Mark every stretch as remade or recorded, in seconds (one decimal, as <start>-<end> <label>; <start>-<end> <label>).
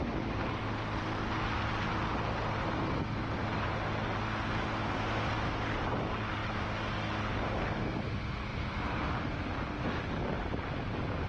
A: 0.0-8.5 recorded; 8.5-9.1 remade; 9.1-11.3 recorded